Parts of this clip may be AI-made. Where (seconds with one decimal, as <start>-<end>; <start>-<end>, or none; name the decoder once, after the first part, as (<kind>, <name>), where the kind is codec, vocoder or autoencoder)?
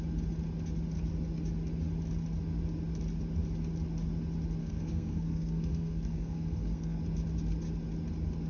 4.6-7.0 (codec, SNAC)